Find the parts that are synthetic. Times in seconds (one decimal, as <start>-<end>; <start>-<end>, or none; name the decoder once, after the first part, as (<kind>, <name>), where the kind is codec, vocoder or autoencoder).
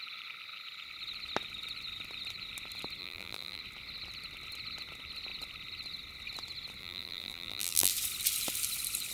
3.0-3.6 (vocoder, BigVGAN v2); 6.8-7.9